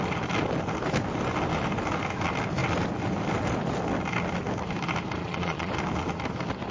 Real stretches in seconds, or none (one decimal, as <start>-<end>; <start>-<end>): 0.0-5.2; 5.7-6.7